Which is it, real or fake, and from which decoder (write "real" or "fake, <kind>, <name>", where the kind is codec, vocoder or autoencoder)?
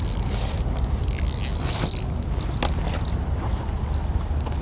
real